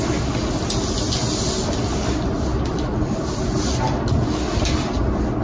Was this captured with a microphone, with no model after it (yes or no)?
yes